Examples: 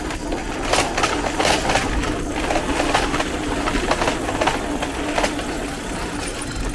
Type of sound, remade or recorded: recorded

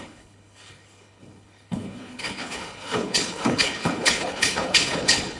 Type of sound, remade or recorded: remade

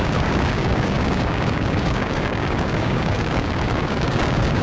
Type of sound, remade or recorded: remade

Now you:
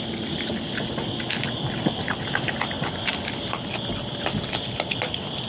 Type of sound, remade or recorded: recorded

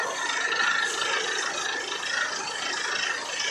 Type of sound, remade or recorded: recorded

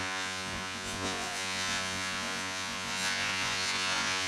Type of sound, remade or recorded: remade